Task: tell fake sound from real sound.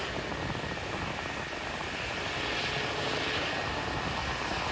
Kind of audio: real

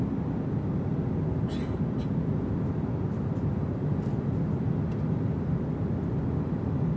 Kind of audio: real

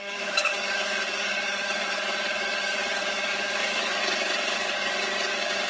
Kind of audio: fake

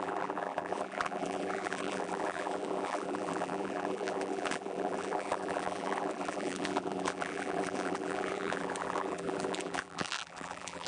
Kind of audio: fake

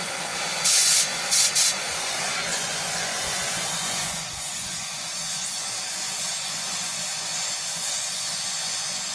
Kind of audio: fake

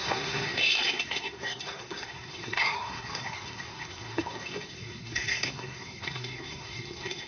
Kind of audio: fake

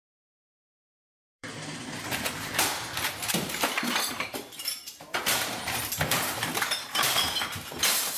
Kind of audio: fake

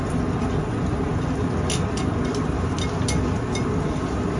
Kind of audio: real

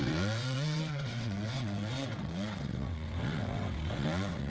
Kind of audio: fake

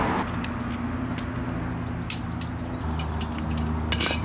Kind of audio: real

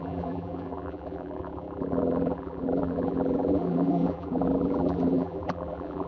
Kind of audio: fake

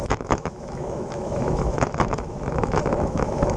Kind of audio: fake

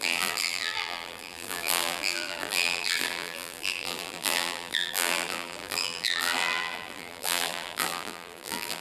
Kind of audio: fake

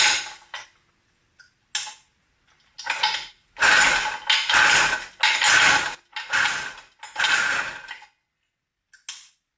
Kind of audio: real